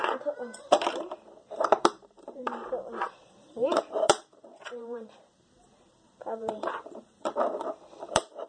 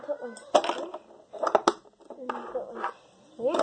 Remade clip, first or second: first